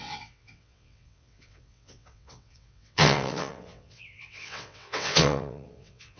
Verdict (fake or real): fake